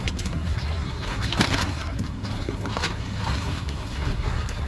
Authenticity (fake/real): fake